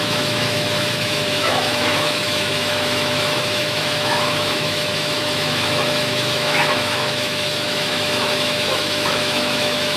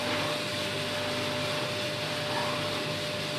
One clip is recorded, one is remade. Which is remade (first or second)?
first